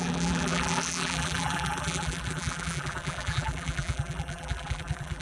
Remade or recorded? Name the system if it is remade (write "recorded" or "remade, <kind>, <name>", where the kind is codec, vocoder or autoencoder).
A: remade, vocoder, BigVGAN v2